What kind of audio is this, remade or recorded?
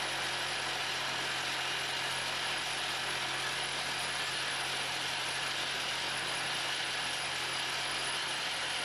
recorded